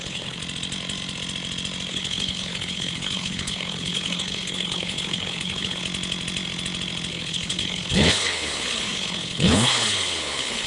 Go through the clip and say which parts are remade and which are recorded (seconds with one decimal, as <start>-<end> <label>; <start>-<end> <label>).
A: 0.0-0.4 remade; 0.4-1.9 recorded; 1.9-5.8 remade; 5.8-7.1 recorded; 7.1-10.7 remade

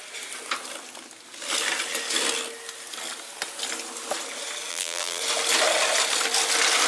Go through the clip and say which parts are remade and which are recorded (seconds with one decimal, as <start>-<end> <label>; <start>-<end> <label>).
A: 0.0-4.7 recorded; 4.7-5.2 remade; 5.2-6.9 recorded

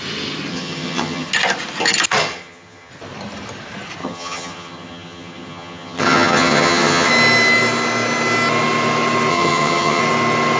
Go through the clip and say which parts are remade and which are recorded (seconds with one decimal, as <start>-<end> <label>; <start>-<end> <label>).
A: 0.0-0.5 recorded; 0.5-1.3 remade; 1.3-2.2 recorded; 2.2-2.9 remade; 2.9-4.0 recorded; 4.0-7.1 remade; 7.1-9.3 recorded; 9.3-10.0 remade; 10.0-10.6 recorded

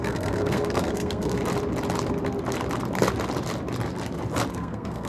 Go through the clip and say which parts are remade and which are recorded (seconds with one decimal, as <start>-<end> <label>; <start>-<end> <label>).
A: 0.0-1.4 remade; 1.4-4.5 recorded; 4.5-5.1 remade

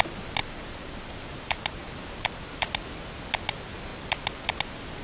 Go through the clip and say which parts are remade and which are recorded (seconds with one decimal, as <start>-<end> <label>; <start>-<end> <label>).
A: 0.0-5.0 recorded

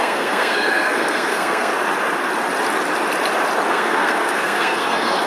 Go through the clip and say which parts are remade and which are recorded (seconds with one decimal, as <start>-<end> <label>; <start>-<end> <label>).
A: 0.0-1.7 remade; 1.7-3.7 recorded; 3.7-5.3 remade

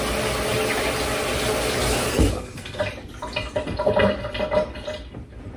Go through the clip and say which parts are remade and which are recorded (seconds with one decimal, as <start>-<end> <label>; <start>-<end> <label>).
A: 0.0-2.1 recorded; 2.1-2.8 remade; 2.8-5.6 recorded